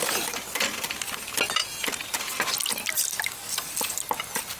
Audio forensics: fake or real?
real